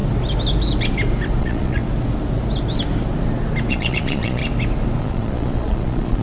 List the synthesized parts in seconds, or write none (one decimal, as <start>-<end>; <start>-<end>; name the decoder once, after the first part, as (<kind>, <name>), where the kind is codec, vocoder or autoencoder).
1.4-1.8 (vocoder, Vocos); 3.7-4.4; 5.0-6.2